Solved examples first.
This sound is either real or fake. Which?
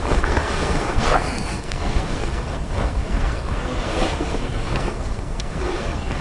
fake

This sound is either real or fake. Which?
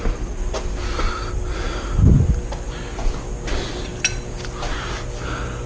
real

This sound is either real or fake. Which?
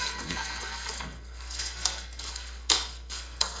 fake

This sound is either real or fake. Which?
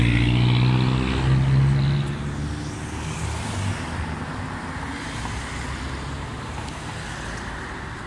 real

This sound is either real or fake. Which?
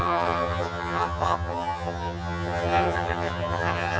fake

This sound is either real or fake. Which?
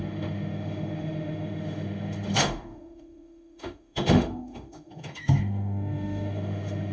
fake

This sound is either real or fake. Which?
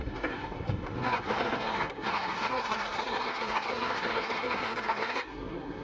fake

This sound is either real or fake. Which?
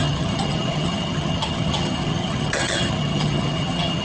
fake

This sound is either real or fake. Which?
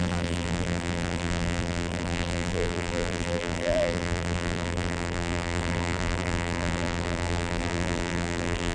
fake